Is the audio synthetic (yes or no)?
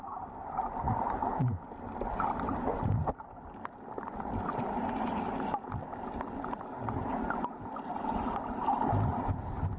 no